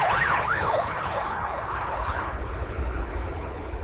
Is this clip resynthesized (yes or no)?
yes